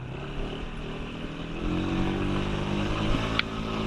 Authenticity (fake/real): real